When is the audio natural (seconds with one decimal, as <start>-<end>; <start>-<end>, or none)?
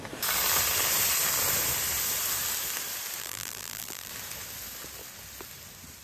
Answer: 0.0-3.2; 4.1-6.0